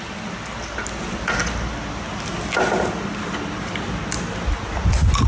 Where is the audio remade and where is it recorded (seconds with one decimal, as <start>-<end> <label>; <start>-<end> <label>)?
0.0-5.3 recorded